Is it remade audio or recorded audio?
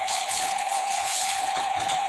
remade